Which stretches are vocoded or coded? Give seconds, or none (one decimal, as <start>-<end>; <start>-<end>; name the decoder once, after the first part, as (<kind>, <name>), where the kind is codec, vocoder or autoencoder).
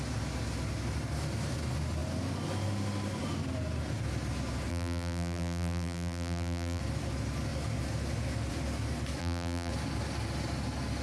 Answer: 4.7-6.8 (vocoder, BigVGAN v2); 9.2-9.7